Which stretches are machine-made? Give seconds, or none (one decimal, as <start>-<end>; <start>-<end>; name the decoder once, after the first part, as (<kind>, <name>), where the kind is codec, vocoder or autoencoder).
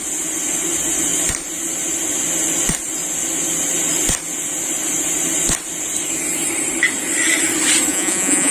7.9-8.5 (vocoder, Vocos)